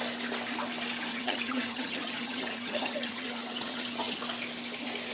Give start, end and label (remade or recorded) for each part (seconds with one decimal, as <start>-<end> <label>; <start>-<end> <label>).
0.0-1.1 recorded; 1.1-4.2 remade; 4.2-5.1 recorded